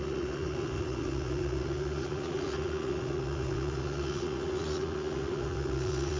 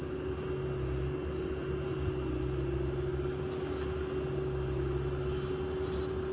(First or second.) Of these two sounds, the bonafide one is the second